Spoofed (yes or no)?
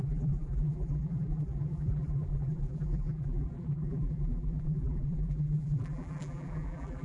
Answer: yes